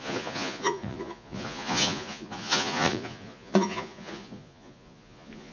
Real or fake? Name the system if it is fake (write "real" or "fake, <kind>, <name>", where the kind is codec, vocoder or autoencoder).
fake, vocoder, Vocos